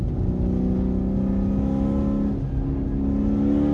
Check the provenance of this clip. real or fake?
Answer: real